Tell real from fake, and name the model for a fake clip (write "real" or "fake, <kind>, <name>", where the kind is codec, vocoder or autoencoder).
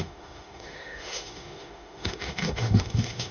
fake, autoencoder, DAC-VAE